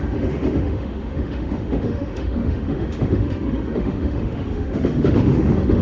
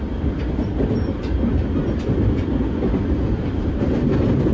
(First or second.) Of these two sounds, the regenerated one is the first